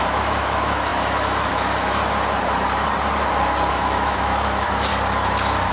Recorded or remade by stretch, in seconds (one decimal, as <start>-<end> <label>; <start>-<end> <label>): 0.0-2.0 remade; 2.0-3.7 recorded; 3.7-4.9 remade; 4.9-5.7 recorded